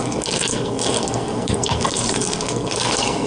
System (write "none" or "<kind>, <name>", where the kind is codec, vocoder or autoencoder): codec, SNAC